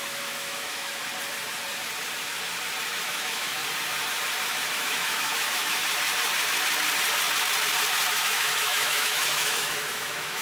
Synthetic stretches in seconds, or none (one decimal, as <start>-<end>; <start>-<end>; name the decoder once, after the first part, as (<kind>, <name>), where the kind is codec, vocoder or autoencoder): 0.0-1.0 (autoencoder, DAC-VAE); 3.0-3.6; 4.8-5.8; 8.1-10.4